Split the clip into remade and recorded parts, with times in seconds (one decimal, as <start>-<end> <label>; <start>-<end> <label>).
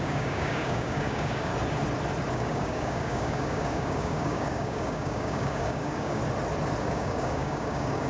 0.0-1.5 remade; 1.5-2.3 recorded; 2.3-6.2 remade; 6.2-6.8 recorded; 6.8-8.1 remade